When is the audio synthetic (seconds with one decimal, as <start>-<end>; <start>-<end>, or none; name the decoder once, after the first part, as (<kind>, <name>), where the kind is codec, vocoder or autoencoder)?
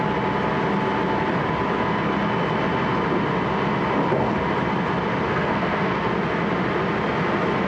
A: 5.3-6.1 (codec, SNAC)